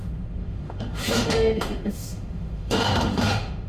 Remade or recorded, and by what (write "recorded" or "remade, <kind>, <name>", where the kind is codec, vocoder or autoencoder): remade, autoencoder, DAC-VAE